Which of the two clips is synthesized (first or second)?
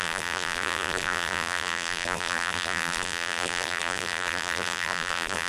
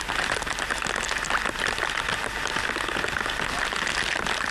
first